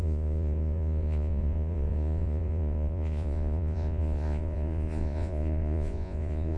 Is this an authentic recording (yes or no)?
no